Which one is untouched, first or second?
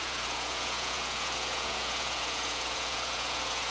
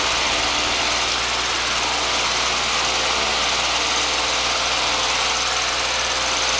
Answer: second